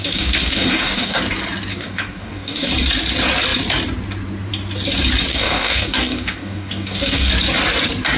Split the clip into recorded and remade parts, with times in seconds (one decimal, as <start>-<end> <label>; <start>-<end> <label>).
0.0-1.2 remade; 1.2-1.7 recorded; 1.7-2.7 remade; 2.7-5.3 recorded; 5.3-7.3 remade; 7.3-8.2 recorded